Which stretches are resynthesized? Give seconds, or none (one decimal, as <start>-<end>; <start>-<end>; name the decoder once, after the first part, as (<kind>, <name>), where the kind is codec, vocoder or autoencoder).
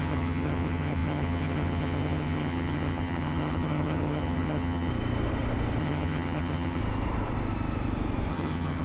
0.0-4.9 (vocoder, HiFi-GAN); 5.8-6.8; 8.3-8.8